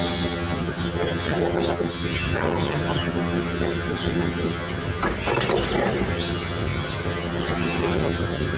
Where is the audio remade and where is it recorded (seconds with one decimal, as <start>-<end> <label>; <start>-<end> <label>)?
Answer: 0.0-5.0 remade; 5.0-6.1 recorded; 6.1-8.6 remade